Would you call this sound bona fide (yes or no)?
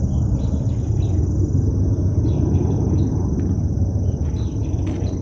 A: yes